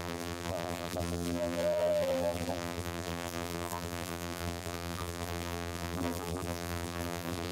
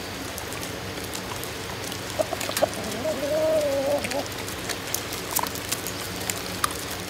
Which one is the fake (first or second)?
first